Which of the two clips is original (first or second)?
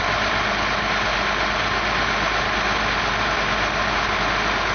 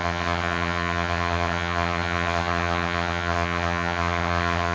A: first